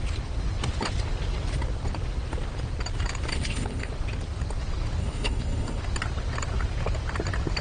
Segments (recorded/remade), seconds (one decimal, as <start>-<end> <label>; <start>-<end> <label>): 0.0-3.3 recorded; 3.3-3.9 remade; 3.9-5.0 recorded; 5.0-5.8 remade; 5.8-7.6 recorded